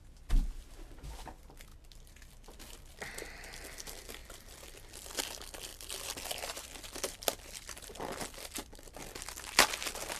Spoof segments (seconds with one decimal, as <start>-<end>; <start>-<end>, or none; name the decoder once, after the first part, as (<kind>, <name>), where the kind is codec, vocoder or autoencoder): 4.2-5.2 (vocoder, BigVGAN v2); 5.7-9.0